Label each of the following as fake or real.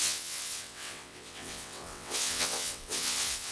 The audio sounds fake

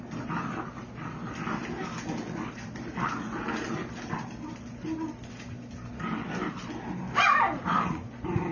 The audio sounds real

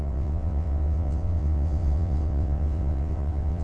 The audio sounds fake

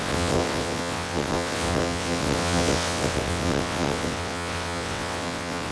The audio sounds fake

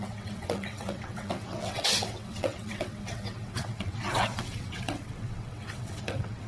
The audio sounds fake